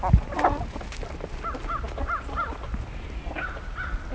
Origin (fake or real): real